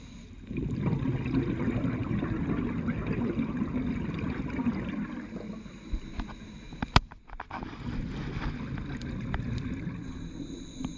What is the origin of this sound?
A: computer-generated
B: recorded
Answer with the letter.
B